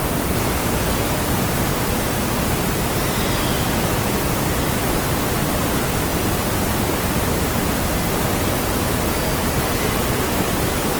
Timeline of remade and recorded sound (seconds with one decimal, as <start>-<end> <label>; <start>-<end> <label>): 0.0-6.1 recorded; 6.1-11.0 remade